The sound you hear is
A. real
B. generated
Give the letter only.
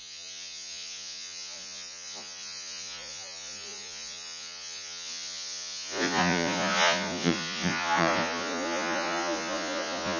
B